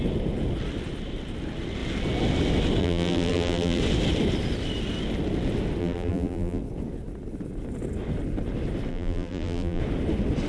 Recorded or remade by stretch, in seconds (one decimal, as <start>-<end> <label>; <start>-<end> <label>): 0.0-2.8 recorded; 2.8-3.8 remade; 3.8-5.8 recorded; 5.8-6.6 remade; 6.6-8.9 recorded; 8.9-9.8 remade; 9.8-10.5 recorded